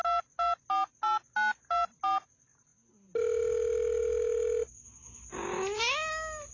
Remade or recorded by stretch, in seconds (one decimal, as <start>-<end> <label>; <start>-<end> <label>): 0.0-6.5 recorded